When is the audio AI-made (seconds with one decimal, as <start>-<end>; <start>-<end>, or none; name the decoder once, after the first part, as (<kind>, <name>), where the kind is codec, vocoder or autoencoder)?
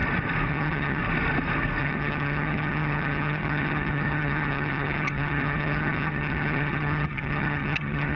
0.5-1.0 (vocoder, HiFi-GAN); 1.8-8.2